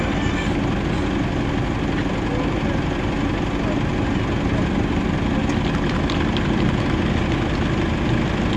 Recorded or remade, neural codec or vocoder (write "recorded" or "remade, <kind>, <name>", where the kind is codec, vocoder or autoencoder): recorded